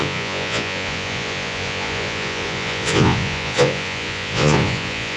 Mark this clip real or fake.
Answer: fake